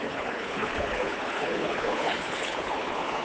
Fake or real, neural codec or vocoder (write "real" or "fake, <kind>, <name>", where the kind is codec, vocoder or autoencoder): fake, codec, HILCodec